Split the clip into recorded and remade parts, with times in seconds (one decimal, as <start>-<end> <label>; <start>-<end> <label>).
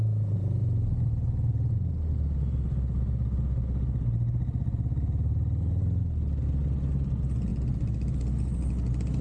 0.0-9.2 recorded